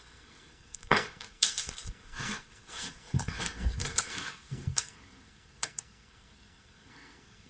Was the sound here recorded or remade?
remade